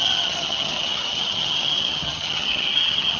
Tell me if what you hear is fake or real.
fake